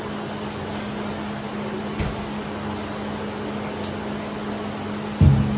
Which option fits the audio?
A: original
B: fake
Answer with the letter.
A